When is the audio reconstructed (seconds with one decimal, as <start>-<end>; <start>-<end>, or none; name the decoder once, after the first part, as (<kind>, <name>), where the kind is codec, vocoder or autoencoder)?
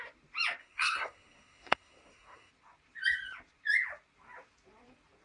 0.6-2.5 (codec, SNAC)